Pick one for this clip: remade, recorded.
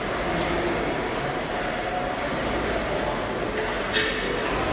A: recorded